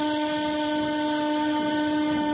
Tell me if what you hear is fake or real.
real